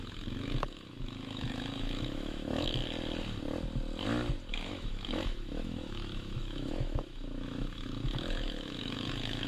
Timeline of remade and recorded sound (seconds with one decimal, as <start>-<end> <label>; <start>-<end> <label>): 0.0-2.8 remade; 2.8-4.5 recorded; 4.5-9.5 remade

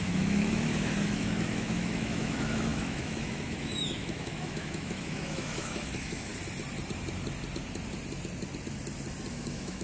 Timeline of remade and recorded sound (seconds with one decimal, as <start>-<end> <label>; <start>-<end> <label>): 0.0-6.3 remade; 6.3-9.3 recorded; 9.3-9.8 remade

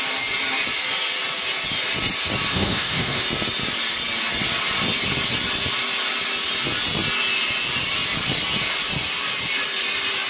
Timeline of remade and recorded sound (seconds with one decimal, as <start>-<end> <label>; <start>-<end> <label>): 0.0-2.5 recorded; 2.5-3.2 remade; 3.2-10.3 recorded

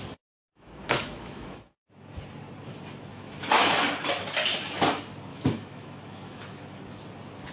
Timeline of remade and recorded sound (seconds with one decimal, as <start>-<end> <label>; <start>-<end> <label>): 0.0-0.5 recorded; 0.5-1.9 remade; 1.9-3.1 recorded; 3.1-3.7 remade; 3.7-5.3 recorded; 5.3-6.8 remade; 6.8-7.5 recorded

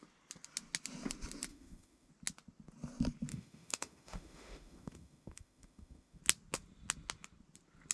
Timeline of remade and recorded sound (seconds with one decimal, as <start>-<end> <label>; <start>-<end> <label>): 0.0-1.5 recorded; 1.5-2.1 remade; 2.1-3.3 recorded; 3.3-6.2 remade; 6.2-7.9 recorded

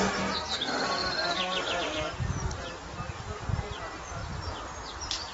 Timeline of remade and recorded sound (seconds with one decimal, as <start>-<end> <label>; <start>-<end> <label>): 0.0-5.3 recorded

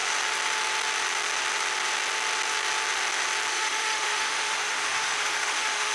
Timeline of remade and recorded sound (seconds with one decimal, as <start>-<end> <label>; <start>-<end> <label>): 0.0-3.5 recorded; 3.5-5.9 remade